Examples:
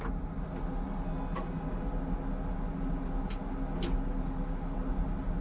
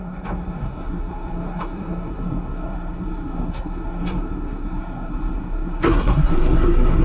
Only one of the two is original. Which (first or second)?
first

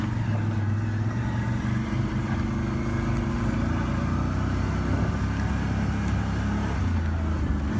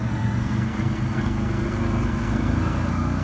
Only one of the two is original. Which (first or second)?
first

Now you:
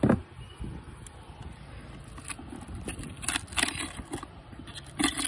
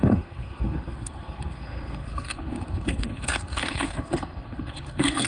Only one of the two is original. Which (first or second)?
first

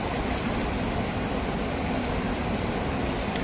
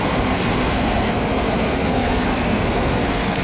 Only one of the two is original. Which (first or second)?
first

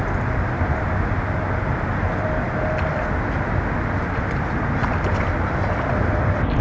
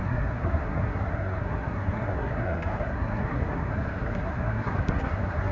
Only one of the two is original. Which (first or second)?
first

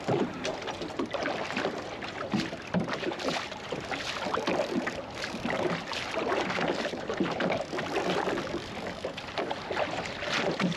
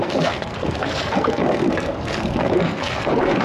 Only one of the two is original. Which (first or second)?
first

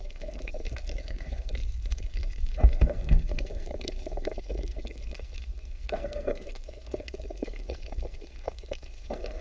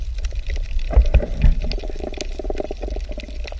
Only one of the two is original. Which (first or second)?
second